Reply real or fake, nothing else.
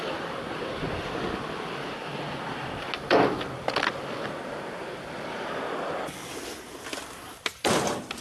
real